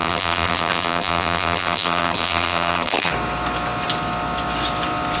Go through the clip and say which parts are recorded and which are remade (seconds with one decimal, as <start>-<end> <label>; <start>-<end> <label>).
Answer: 0.0-3.1 remade; 3.1-5.2 recorded

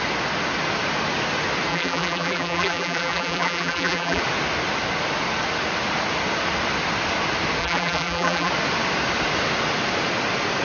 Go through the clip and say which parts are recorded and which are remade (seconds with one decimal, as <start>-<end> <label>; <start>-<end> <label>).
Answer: 0.0-1.7 recorded; 1.7-4.2 remade; 4.2-7.6 recorded; 7.6-8.5 remade; 8.5-10.6 recorded

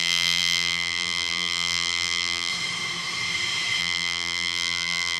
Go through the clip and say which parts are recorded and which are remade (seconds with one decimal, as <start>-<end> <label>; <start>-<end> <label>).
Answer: 0.0-2.5 remade; 2.5-3.8 recorded; 3.8-5.2 remade

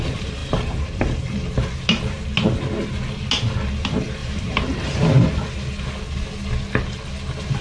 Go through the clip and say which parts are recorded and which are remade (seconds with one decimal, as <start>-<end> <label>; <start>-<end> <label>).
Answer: 0.0-0.4 recorded; 0.4-1.5 remade; 1.5-4.2 recorded; 4.2-5.0 remade; 5.0-7.6 recorded

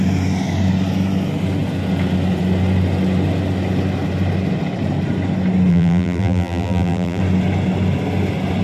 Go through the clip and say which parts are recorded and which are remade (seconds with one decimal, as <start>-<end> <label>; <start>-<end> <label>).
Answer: 0.0-5.7 recorded; 5.7-7.2 remade; 7.2-8.6 recorded

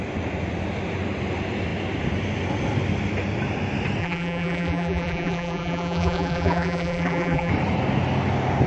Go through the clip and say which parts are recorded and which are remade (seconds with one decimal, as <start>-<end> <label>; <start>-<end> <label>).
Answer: 0.0-4.0 recorded; 4.0-7.5 remade; 7.5-8.7 recorded